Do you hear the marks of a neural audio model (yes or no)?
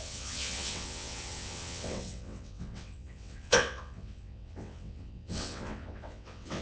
yes